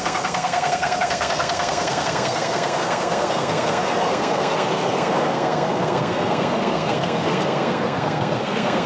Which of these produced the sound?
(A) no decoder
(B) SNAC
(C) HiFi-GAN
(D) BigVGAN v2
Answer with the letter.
B